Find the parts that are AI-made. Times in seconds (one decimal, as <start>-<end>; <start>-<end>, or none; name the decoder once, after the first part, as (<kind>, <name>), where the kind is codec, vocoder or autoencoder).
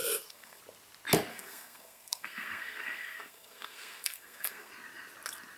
0.0-0.6 (codec, SNAC); 1.3-4.7